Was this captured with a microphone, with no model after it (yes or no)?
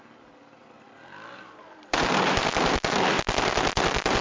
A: yes